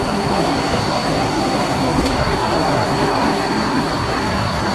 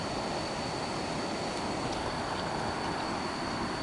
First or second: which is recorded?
second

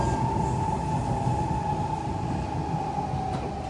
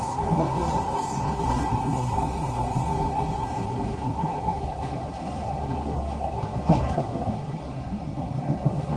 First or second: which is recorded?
first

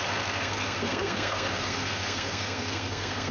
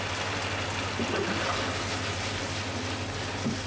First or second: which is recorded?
second